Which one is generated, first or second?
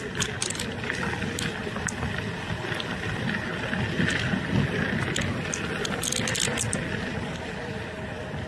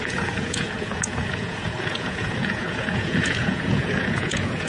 second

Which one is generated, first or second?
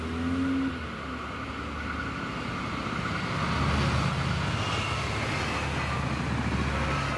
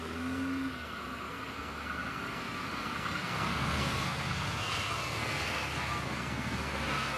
second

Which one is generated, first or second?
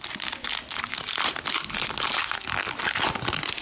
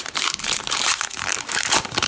second